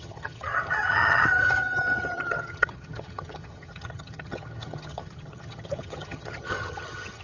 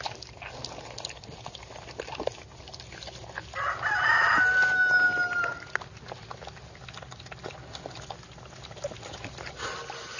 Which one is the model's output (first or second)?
first